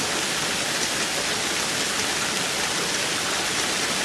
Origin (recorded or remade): recorded